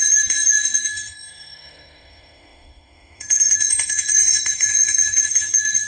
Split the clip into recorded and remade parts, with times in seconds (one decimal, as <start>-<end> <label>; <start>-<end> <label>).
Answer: 0.0-5.9 remade